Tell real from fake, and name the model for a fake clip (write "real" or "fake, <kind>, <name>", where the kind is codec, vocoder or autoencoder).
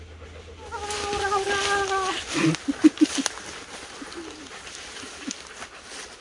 real